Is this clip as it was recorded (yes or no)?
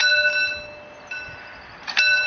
yes